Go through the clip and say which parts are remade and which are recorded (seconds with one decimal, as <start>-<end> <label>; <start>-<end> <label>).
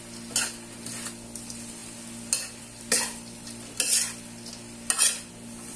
0.0-5.8 recorded